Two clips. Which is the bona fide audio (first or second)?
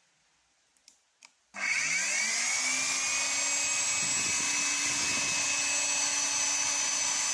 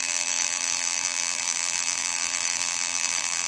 first